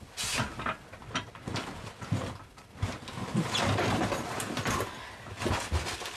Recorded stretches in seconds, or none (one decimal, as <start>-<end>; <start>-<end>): 0.0-6.2